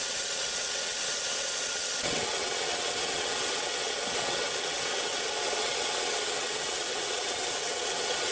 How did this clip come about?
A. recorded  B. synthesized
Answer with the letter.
B